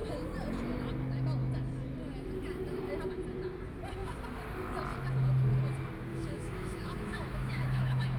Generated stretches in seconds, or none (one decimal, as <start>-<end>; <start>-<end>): 6.1-8.2